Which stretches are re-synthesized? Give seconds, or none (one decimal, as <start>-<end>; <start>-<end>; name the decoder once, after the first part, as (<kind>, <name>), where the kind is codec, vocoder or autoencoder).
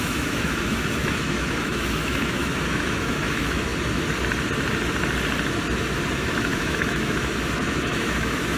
0.0-3.7 (autoencoder, DAC-VAE); 6.1-8.6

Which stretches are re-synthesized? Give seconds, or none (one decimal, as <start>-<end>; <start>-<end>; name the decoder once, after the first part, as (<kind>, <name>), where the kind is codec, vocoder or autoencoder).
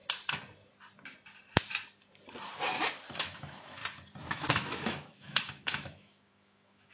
3.1-3.8 (autoencoder, DAC-VAE); 4.3-6.9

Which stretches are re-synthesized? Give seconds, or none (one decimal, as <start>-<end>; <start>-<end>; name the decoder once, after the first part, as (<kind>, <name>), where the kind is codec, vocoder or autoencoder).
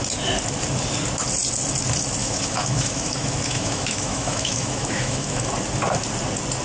2.2-5.5 (autoencoder, DAC-VAE)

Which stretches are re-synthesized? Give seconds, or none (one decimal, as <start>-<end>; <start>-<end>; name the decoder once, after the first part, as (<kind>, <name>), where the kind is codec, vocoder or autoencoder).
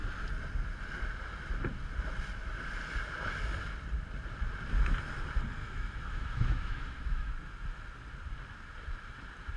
5.6-7.3 (autoencoder, DAC-VAE)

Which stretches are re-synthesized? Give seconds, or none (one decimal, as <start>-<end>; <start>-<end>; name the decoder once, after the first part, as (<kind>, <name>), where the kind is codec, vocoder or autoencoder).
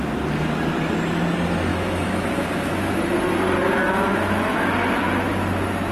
1.7-2.9 (autoencoder, DAC-VAE); 3.8-4.7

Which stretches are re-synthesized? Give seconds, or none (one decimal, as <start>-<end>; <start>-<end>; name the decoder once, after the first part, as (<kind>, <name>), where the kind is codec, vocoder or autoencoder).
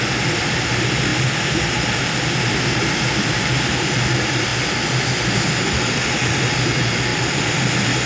none